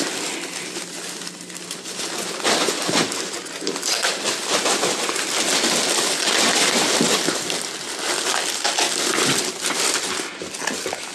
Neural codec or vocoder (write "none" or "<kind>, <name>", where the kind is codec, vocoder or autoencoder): none